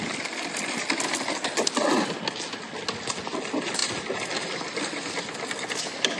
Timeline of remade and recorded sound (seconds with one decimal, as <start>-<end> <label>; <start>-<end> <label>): 0.0-6.2 recorded